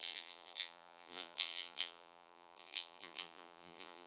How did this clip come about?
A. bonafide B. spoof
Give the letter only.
B